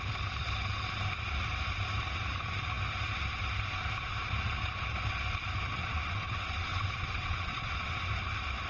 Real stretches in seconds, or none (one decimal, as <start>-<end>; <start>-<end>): 0.0-5.8; 8.1-8.7